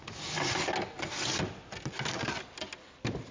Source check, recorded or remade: recorded